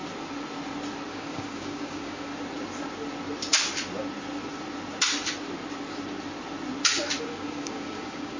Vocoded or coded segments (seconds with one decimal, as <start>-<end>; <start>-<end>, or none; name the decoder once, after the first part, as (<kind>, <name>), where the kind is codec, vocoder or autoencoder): 1.1-2.3 (codec, DAC); 7.2-8.4